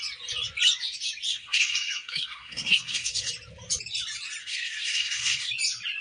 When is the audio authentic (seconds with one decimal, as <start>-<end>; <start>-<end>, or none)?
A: 0.0-1.3; 3.3-4.4; 5.5-6.0